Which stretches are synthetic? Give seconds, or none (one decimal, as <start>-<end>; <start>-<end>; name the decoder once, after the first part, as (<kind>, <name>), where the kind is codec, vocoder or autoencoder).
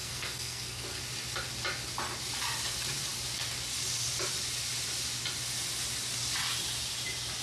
0.0-1.0 (codec, SNAC)